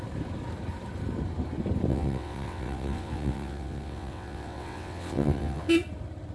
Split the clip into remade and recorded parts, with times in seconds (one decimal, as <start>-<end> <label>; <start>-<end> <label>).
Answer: 0.0-1.9 recorded; 1.9-5.7 remade; 5.7-6.3 recorded